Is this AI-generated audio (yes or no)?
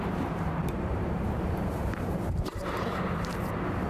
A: yes